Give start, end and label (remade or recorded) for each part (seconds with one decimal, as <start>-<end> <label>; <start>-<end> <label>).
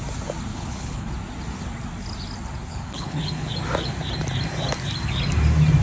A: 0.0-0.5 recorded; 0.5-1.1 remade; 1.1-2.6 recorded; 2.6-3.5 remade; 3.5-5.8 recorded